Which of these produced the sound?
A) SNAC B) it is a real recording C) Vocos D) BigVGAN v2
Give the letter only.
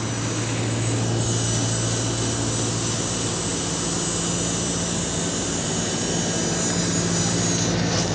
B